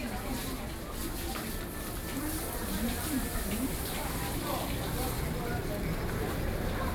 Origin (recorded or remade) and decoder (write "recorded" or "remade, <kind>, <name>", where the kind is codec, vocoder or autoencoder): recorded